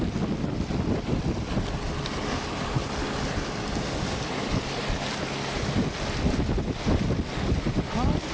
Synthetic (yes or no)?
no